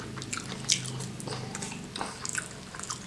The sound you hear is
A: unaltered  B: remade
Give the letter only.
A